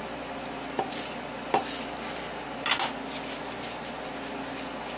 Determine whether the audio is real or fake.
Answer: real